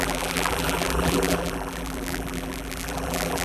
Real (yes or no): no